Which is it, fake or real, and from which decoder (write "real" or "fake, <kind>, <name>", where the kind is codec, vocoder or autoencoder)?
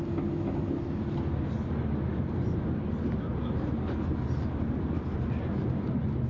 real